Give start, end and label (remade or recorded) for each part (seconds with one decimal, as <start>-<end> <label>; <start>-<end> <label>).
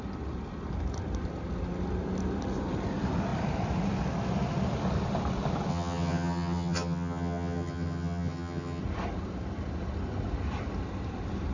0.0-5.7 recorded; 5.7-8.8 remade; 8.8-11.5 recorded